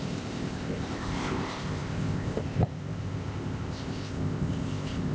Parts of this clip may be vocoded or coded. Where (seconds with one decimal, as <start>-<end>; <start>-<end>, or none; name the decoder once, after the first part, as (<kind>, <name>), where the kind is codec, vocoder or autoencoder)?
0.0-5.1 (codec, ZipCodec)

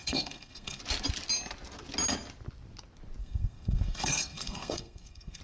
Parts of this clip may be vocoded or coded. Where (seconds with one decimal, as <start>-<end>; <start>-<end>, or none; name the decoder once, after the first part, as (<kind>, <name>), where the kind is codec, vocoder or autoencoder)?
0.0-0.8 (codec, SNAC); 3.2-5.4

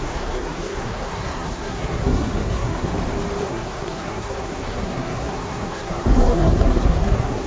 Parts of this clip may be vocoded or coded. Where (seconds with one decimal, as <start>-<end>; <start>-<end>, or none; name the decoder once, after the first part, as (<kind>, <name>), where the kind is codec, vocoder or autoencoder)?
0.0-2.9 (codec, SNAC); 3.4-7.5

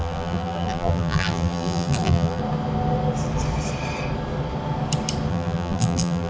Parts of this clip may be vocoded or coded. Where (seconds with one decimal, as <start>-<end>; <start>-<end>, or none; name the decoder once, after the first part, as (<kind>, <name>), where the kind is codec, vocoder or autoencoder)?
0.0-2.4 (vocoder, BigVGAN v2); 5.3-6.3

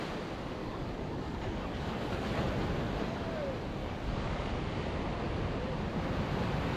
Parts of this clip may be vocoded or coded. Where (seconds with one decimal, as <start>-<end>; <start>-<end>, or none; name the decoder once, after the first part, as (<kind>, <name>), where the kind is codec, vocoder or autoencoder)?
0.6-2.2 (codec, DAC); 3.8-4.5

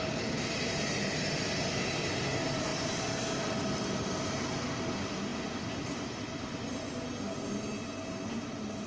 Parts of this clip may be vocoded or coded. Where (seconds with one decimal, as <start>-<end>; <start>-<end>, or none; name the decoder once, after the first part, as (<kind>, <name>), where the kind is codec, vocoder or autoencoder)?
2.7-3.8 (vocoder, BigVGAN v2); 5.3-6.4